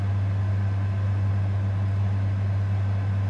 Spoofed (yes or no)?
no